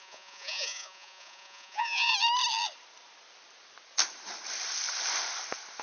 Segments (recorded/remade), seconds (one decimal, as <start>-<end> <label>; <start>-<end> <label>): 0.0-2.1 remade; 2.1-5.8 recorded